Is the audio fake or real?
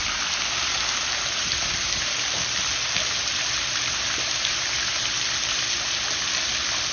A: real